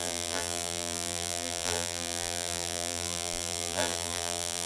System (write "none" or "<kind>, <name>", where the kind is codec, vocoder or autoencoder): vocoder, BigVGAN v2